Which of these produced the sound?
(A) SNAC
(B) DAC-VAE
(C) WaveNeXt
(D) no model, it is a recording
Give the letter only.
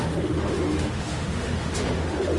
B